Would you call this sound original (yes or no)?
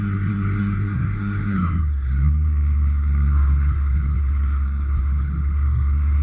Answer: no